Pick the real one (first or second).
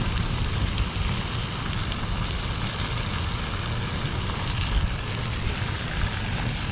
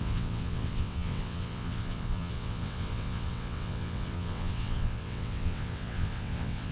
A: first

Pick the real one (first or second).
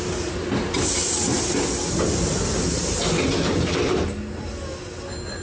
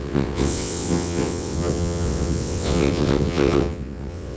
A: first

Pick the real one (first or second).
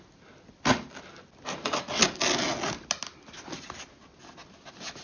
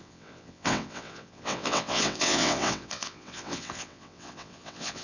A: first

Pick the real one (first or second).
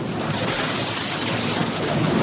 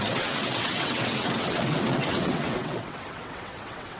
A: first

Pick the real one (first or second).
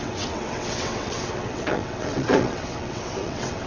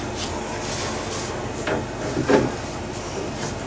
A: second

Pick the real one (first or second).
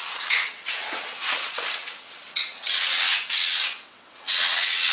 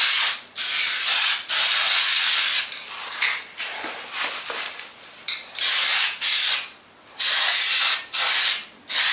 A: second